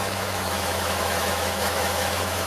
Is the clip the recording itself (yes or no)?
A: no